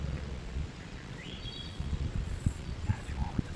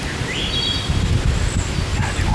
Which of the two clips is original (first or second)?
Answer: second